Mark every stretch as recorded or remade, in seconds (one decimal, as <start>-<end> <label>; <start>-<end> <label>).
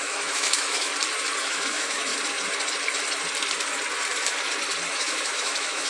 0.0-0.9 remade; 0.9-1.4 recorded; 1.4-2.1 remade; 2.1-4.9 recorded; 4.9-5.9 remade